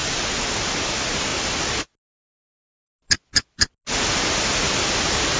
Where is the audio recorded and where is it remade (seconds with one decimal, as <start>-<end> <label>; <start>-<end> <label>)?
0.0-5.4 recorded